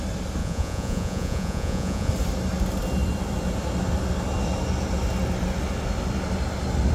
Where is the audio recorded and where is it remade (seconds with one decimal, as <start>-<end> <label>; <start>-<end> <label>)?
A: 0.0-0.4 recorded; 0.4-2.1 remade; 2.1-6.9 recorded